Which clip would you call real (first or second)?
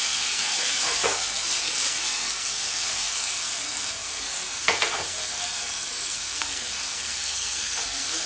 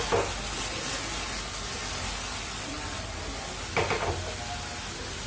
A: second